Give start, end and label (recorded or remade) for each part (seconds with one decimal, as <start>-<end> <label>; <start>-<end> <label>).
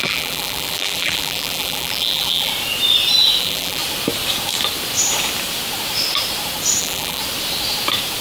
0.0-2.5 remade; 2.5-3.4 recorded; 3.4-3.8 remade; 3.8-6.8 recorded; 6.8-7.2 remade; 7.2-8.2 recorded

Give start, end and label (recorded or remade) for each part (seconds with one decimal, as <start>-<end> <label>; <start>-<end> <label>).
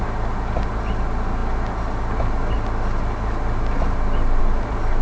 0.0-5.0 recorded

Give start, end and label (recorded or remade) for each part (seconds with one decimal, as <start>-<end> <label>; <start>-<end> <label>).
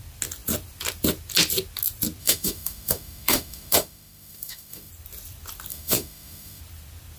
0.0-2.2 recorded; 2.2-4.9 remade; 4.9-5.7 recorded; 5.7-6.6 remade; 6.6-7.2 recorded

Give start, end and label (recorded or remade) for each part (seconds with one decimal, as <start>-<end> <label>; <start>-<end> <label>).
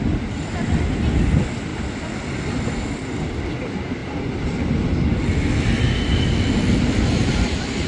0.0-7.9 recorded